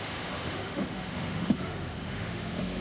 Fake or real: fake